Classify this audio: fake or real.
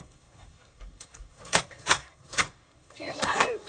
fake